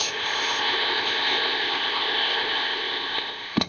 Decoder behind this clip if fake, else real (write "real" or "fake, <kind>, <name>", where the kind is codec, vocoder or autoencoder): fake, codec, ZipCodec